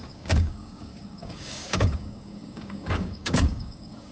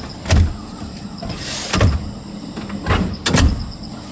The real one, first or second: second